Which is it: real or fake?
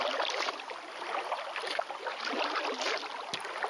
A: real